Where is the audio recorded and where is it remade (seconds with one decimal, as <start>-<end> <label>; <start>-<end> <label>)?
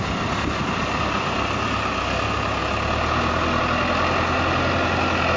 0.0-5.4 recorded